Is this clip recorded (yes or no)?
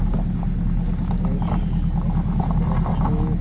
yes